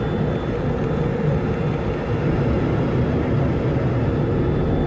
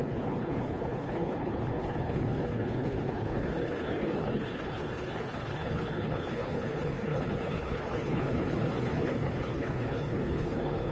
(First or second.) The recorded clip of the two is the first